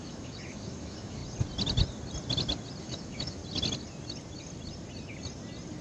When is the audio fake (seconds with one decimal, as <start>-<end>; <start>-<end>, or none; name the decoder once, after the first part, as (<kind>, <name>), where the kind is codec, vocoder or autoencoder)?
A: 0.0-1.2 (autoencoder, DAC-VAE); 2.8-3.4